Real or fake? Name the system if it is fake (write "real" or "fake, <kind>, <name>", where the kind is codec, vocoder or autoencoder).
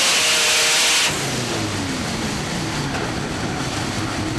real